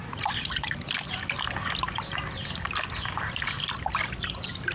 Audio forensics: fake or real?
real